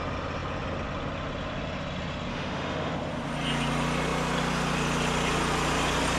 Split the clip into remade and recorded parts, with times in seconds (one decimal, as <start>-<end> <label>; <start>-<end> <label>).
0.0-2.3 recorded; 2.3-2.9 remade; 2.9-6.2 recorded